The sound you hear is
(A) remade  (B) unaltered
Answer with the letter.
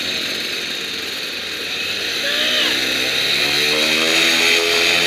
B